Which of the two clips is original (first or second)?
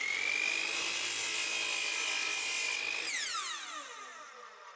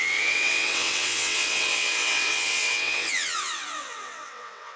first